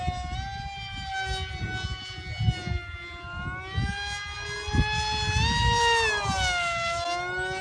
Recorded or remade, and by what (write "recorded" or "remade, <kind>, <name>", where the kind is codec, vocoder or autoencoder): recorded